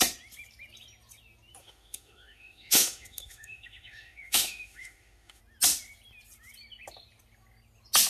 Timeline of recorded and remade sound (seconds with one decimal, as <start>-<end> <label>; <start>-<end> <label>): 0.0-1.6 recorded; 1.6-5.4 remade; 5.4-8.1 recorded